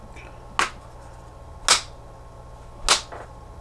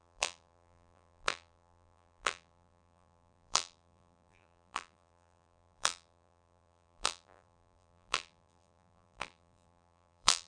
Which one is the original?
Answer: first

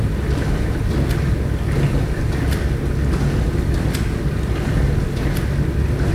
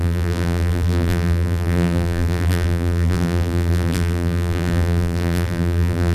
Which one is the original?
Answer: first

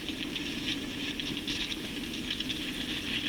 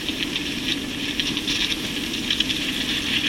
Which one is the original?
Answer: first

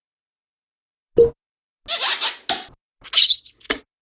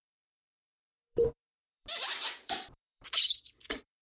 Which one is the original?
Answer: first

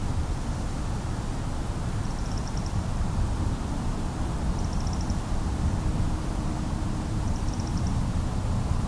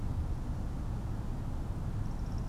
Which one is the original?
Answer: second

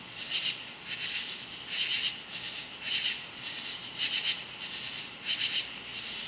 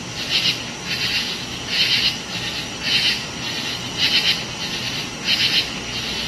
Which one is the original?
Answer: second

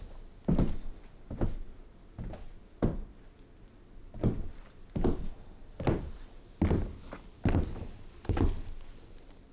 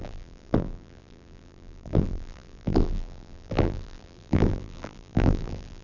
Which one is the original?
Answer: first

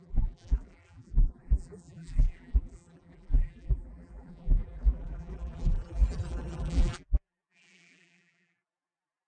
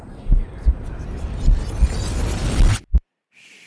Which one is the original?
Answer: second